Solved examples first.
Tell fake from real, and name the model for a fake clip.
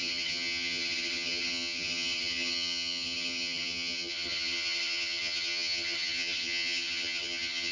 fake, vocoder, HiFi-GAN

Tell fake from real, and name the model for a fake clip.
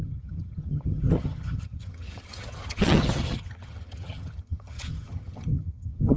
fake, vocoder, HiFi-GAN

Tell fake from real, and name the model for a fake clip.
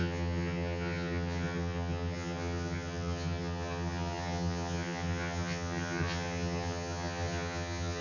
fake, vocoder, HiFi-GAN